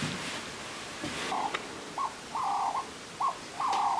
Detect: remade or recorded recorded